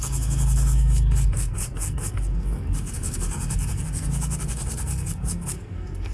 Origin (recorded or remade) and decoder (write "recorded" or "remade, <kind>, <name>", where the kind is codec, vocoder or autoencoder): remade, codec, SNAC